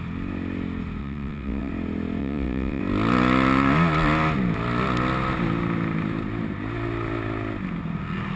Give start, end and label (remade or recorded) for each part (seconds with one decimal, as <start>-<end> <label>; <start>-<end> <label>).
0.0-1.0 recorded; 1.0-1.7 remade; 1.7-2.2 recorded; 2.2-2.8 remade; 2.8-8.4 recorded